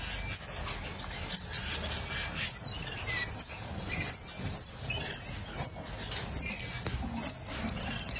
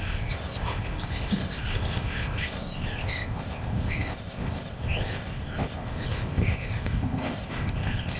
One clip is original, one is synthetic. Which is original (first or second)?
first